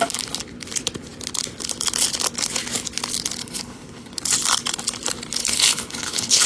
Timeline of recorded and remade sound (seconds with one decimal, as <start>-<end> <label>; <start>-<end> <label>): 0.0-3.4 recorded; 3.4-4.2 remade; 4.2-5.4 recorded; 5.4-6.5 remade